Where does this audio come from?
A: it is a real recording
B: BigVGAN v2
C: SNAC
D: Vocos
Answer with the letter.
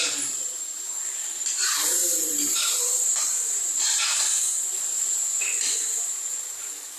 B